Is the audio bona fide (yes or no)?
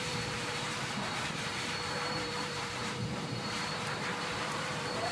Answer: no